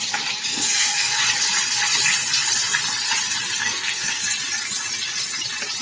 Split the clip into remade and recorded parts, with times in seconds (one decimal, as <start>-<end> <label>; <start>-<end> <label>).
0.0-0.5 recorded; 0.5-1.2 remade; 1.2-3.6 recorded; 3.6-4.2 remade; 4.2-5.8 recorded